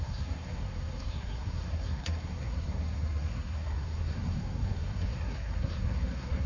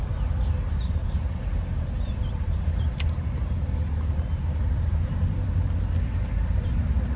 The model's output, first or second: first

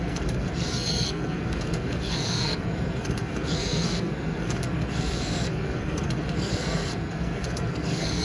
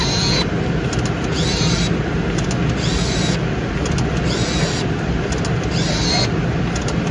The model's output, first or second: first